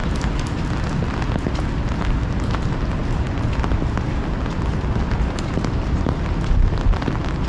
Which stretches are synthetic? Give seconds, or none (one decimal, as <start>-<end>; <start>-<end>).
none